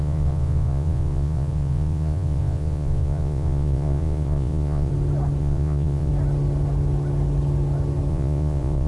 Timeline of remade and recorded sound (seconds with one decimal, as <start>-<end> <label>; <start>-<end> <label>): 0.0-4.9 remade; 4.9-5.4 recorded; 5.4-6.1 remade; 6.1-8.1 recorded; 8.1-8.9 remade